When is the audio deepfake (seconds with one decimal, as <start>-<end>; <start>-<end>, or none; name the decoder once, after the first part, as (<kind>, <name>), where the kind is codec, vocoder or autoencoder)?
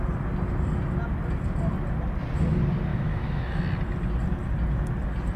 2.9-3.6 (autoencoder, DAC-VAE)